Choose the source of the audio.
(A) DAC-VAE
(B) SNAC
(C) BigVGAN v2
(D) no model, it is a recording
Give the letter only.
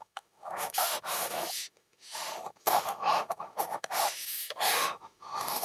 A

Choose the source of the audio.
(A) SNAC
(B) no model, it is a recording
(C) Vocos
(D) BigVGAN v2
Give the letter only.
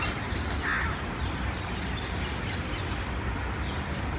B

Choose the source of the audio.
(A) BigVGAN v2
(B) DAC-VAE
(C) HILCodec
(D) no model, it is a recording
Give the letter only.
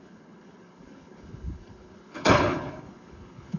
C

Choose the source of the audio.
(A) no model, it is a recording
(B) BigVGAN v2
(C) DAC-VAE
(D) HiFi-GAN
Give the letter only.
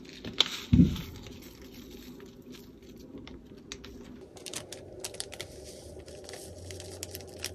A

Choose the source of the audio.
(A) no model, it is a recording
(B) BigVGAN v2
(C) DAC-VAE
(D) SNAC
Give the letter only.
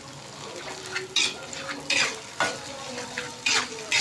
A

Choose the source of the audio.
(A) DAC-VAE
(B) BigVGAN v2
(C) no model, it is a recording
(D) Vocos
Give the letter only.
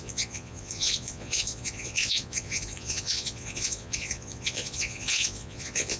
D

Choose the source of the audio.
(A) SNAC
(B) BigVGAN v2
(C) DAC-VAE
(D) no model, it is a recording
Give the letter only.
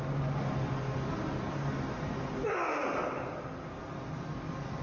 D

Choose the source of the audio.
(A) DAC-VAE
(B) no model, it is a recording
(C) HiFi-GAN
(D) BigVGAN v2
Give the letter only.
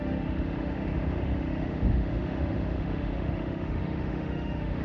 A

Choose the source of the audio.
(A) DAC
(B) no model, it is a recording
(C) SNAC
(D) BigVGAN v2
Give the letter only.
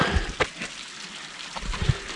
B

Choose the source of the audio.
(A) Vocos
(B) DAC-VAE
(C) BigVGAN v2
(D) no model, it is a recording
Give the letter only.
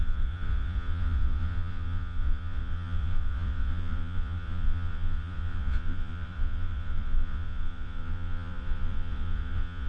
A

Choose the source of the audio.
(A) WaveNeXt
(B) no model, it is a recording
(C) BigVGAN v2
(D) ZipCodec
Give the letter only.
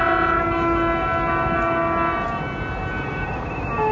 B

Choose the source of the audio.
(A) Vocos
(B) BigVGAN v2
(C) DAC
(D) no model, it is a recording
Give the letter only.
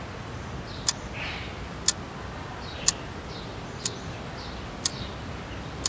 D